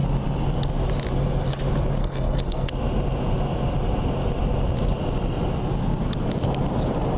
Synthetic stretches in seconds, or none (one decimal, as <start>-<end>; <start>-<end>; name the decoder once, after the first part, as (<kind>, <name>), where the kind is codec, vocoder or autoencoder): 2.0-2.7 (codec, SNAC)